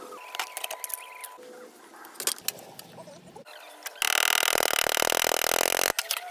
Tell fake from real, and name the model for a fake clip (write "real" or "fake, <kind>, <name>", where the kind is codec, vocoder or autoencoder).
real